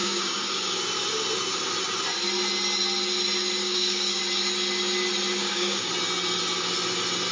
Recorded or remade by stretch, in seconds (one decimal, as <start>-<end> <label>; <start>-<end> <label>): 0.0-0.8 remade; 0.8-3.6 recorded; 3.6-4.2 remade; 4.2-5.4 recorded; 5.4-5.9 remade; 5.9-7.3 recorded